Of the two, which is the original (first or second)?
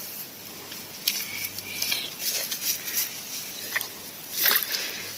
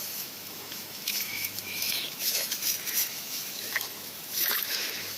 first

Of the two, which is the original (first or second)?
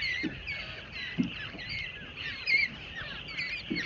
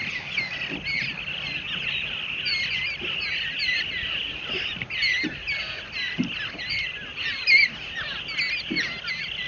second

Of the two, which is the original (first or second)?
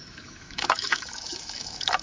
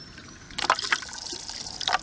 second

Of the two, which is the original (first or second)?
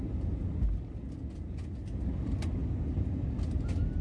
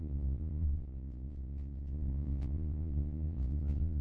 first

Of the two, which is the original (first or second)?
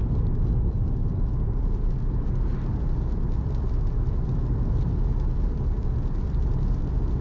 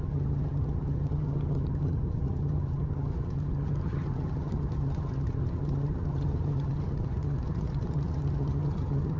first